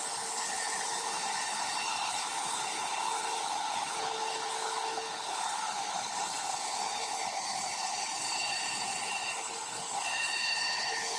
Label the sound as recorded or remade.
remade